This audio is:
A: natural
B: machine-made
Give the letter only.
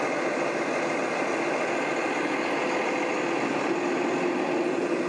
A